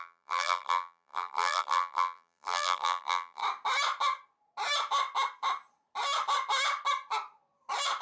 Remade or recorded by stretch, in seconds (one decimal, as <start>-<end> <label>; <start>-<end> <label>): 0.0-3.4 remade; 3.4-8.0 recorded